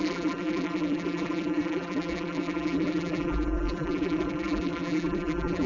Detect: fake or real fake